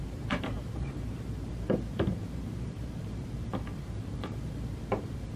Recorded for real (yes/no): no